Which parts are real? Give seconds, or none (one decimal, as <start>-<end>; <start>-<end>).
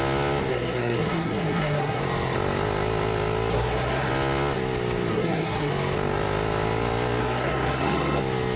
0.0-0.5; 2.0-3.5; 4.1-5.1; 5.7-7.2; 8.2-8.6